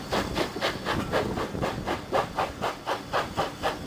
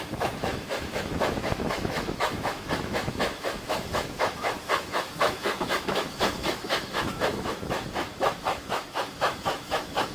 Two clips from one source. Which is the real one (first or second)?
first